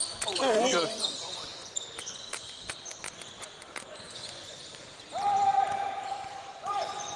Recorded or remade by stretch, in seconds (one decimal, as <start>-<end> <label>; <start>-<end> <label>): 0.0-4.9 remade; 4.9-6.1 recorded; 6.1-7.2 remade